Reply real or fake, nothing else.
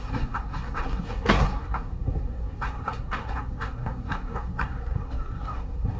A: fake